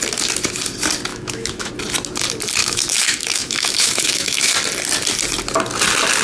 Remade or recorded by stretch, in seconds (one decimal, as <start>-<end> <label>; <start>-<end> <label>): 0.0-1.1 recorded; 1.1-1.7 remade; 1.7-2.6 recorded; 2.6-4.5 remade; 4.5-6.2 recorded